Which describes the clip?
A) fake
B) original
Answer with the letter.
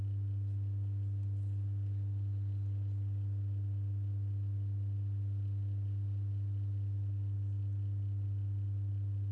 B